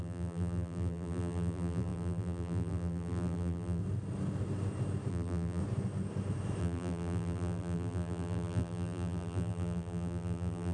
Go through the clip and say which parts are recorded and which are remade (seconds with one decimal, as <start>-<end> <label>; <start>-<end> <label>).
0.0-3.8 remade; 3.8-5.1 recorded; 5.1-5.6 remade; 5.6-6.6 recorded; 6.6-10.7 remade